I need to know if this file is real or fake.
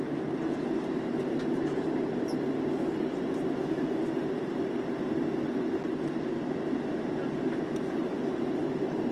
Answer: real